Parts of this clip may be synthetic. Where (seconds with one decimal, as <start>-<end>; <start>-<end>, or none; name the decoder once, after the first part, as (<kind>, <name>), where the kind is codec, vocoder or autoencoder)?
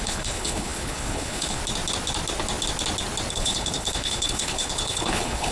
0.0-1.6 (codec, HILCodec); 3.3-5.5